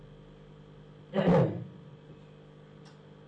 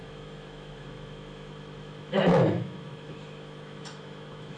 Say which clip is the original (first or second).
first